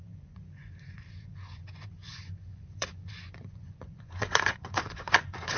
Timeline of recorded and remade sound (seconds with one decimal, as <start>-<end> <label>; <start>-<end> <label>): 0.0-5.6 remade